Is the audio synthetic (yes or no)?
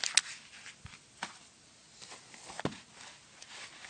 no